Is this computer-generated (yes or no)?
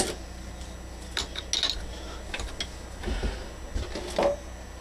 no